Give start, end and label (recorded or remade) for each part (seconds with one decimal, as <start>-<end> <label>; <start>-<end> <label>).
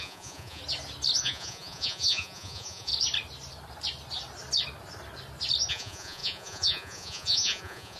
0.0-0.6 remade; 0.6-1.2 recorded; 1.2-2.9 remade; 2.9-5.7 recorded; 5.7-8.0 remade